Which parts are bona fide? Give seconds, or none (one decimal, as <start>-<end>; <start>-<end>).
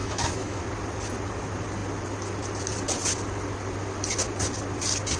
0.6-5.2